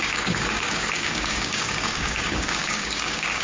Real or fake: fake